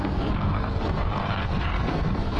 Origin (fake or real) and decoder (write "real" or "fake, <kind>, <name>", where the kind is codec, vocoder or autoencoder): fake, codec, SNAC